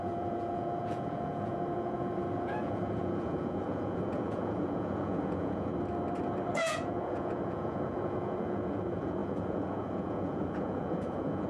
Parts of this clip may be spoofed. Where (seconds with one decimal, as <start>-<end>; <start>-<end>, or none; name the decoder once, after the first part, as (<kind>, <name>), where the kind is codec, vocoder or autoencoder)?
0.0-5.7 (vocoder, Vocos); 6.5-11.5